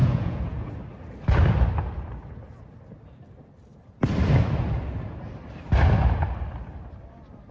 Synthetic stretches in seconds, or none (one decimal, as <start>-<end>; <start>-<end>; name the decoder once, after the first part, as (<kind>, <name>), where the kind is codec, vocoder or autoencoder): 0.0-0.7 (vocoder, Vocos)